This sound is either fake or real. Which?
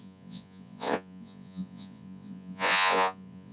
fake